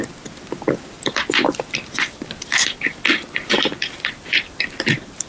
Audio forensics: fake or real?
fake